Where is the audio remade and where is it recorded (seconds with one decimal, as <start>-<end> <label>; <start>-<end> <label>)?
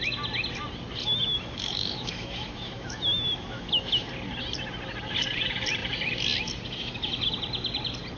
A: 0.0-1.0 recorded; 1.0-4.1 remade; 4.1-8.2 recorded